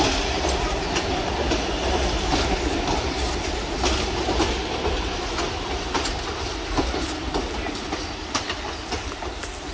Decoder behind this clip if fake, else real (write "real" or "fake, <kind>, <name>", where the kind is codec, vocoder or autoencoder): real